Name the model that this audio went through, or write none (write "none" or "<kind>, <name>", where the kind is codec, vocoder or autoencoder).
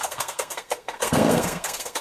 codec, SNAC